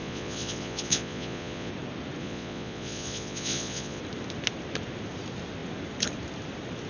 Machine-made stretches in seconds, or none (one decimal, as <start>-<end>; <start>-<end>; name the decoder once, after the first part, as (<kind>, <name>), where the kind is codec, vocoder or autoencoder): 0.0-1.7 (vocoder, Vocos); 2.2-4.0